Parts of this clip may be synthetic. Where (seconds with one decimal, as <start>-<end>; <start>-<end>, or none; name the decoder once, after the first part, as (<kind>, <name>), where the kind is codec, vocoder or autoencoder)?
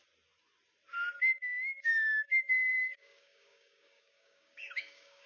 1.9-5.3 (codec, DAC)